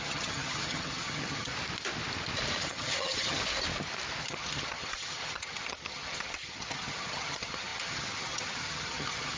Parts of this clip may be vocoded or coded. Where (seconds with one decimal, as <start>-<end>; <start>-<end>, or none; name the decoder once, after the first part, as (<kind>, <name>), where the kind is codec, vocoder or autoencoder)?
0.0-1.5 (vocoder, HiFi-GAN); 2.6-3.4; 4.2-9.4